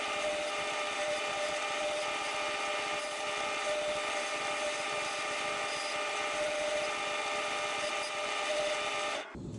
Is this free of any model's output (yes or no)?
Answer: yes